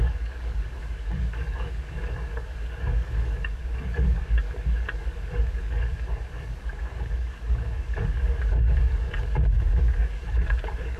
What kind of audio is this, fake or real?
fake